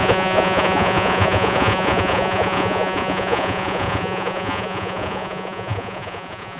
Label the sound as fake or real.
fake